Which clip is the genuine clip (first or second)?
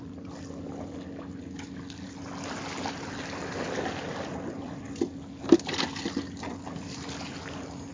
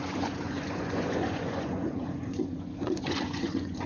first